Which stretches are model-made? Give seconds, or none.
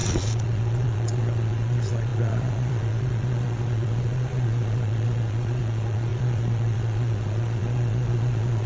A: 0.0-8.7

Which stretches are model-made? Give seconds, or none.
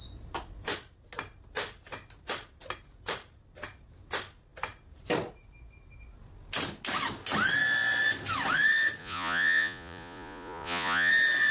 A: 9.0-11.1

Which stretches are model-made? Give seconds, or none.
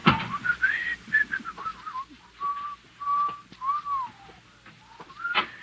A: 0.0-0.6